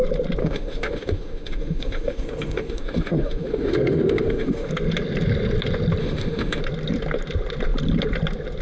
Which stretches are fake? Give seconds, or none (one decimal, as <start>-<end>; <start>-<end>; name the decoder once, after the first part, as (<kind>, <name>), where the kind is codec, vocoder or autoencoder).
0.4-4.7 (autoencoder, DAC-VAE); 6.0-6.6